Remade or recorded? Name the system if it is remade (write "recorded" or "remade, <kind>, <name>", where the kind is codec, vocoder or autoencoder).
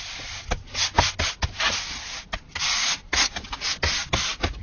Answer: recorded